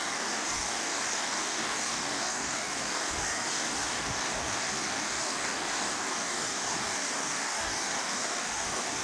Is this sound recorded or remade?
remade